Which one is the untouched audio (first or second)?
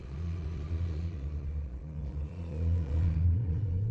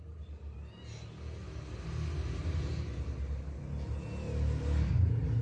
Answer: second